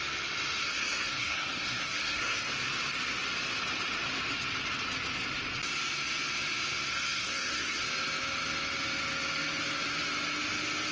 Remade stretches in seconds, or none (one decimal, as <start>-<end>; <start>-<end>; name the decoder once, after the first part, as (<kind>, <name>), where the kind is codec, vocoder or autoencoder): 0.6-2.5 (codec, SNAC); 6.9-7.8